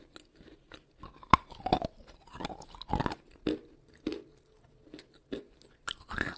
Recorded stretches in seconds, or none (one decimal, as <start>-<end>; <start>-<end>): 0.0-6.4